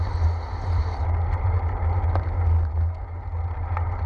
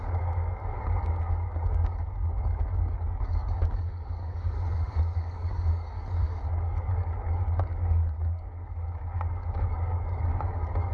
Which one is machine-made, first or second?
second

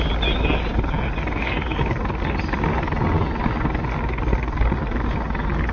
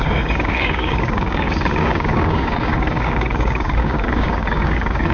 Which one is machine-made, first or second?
second